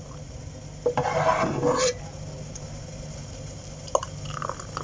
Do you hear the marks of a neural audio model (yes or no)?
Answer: no